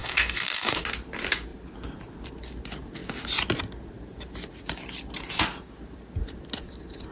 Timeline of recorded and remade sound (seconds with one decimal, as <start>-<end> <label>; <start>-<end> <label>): 0.0-0.8 remade; 0.8-7.1 recorded